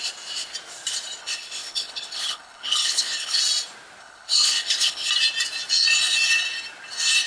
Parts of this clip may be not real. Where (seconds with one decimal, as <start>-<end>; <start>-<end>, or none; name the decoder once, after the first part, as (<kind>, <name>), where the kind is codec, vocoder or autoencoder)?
1.2-3.4 (codec, HILCodec); 4.0-5.1